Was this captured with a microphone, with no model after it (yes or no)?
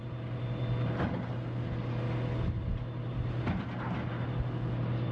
yes